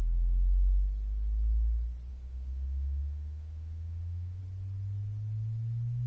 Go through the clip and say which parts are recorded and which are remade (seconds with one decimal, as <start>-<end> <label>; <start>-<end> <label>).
0.0-2.1 recorded; 2.1-4.4 remade; 4.4-6.1 recorded